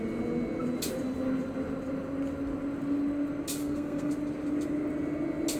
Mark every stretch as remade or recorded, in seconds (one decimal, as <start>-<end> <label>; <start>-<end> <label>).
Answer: 0.0-3.6 recorded; 3.6-4.1 remade; 4.1-5.6 recorded